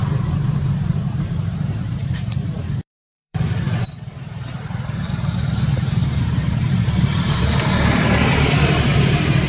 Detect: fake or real fake